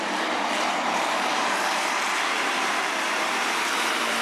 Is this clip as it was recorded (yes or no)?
no